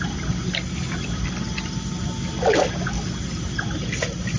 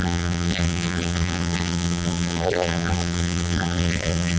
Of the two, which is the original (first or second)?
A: first